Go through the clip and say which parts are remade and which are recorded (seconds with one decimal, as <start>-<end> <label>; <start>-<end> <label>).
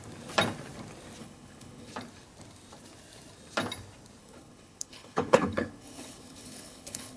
0.0-1.2 recorded; 1.2-1.9 remade; 1.9-4.2 recorded; 4.2-7.2 remade